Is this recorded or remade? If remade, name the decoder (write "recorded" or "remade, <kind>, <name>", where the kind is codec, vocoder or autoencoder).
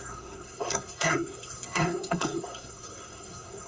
remade, codec, SNAC